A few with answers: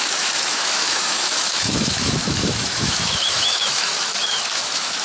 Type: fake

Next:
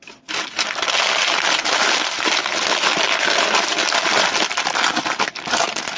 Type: real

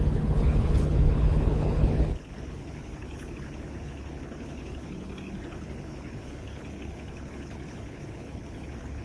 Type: fake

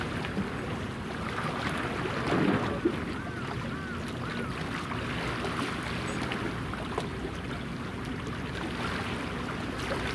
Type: real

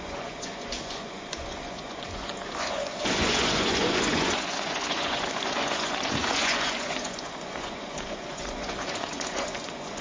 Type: fake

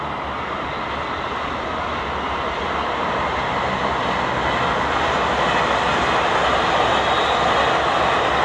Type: real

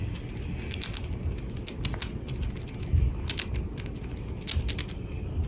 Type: real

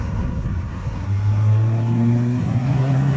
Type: fake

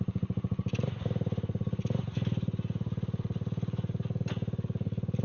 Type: real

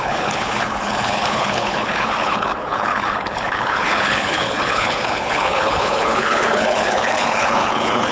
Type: fake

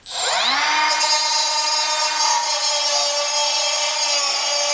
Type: real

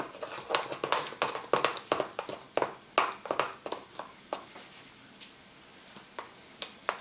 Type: real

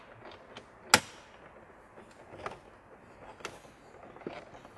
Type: real